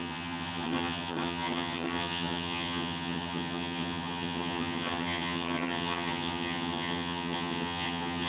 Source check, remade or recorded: remade